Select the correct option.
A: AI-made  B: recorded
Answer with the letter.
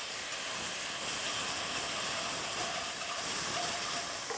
B